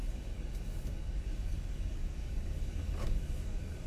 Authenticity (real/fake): fake